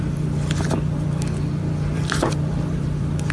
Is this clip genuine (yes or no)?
no